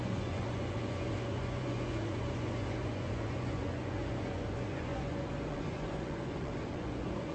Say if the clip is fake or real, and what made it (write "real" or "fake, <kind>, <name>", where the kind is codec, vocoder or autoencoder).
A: fake, vocoder, Vocos